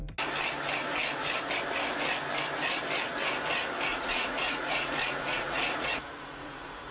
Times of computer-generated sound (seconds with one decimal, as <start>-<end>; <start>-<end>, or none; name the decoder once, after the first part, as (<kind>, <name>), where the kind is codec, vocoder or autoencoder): 3.9-6.9 (vocoder, Vocos)